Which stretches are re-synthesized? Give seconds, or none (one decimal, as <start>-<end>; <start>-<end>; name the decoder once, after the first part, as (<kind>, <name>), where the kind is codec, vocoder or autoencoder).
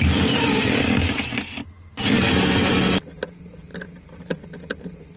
none